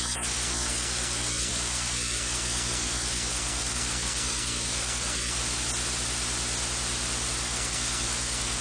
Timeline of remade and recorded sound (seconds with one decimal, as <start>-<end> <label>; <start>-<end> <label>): 0.0-5.4 remade; 5.4-7.4 recorded; 7.4-8.6 remade